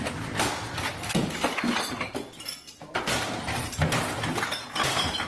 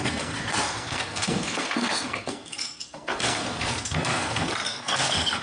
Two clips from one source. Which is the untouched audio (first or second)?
first